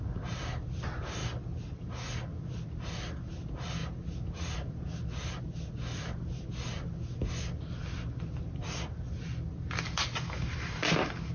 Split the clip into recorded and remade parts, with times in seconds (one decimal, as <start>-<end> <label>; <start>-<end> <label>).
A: 0.0-11.3 recorded